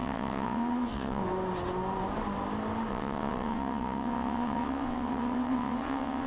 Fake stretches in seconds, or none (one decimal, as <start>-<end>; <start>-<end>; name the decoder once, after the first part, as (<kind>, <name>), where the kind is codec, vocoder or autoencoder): 0.0-1.2 (vocoder, WaveNeXt); 2.9-6.3